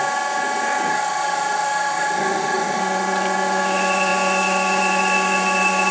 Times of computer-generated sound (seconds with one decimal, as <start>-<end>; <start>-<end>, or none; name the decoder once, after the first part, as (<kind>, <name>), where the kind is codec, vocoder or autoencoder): 0.9-2.8 (autoencoder, DAC-VAE)